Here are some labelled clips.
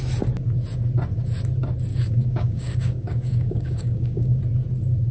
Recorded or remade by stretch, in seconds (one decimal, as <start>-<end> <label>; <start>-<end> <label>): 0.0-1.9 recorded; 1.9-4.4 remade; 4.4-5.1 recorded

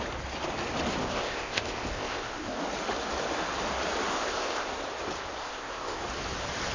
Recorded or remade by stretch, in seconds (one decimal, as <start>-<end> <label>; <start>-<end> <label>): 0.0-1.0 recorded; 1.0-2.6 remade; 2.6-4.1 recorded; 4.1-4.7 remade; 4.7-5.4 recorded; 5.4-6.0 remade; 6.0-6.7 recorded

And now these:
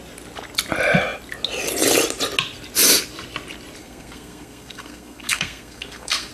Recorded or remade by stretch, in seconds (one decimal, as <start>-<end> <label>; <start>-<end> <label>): 0.0-3.8 recorded; 3.8-6.3 remade

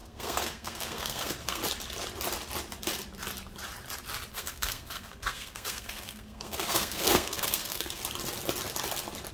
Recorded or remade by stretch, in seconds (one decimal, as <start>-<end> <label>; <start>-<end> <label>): 0.0-1.6 remade; 1.6-4.3 recorded; 4.3-8.0 remade; 8.0-9.3 recorded

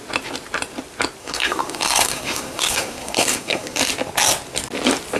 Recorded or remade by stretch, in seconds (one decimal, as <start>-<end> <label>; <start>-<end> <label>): 0.0-1.2 recorded; 1.2-3.8 remade; 3.8-5.2 recorded

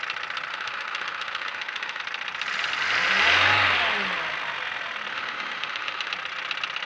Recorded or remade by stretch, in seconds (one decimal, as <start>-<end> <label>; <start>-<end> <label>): 0.0-0.5 recorded; 0.5-2.0 remade; 2.0-5.1 recorded; 5.1-6.1 remade; 6.1-6.9 recorded